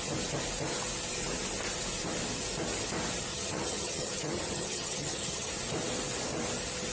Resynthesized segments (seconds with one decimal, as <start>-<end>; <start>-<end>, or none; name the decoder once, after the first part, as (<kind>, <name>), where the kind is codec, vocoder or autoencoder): 3.3-5.5 (vocoder, HiFi-GAN)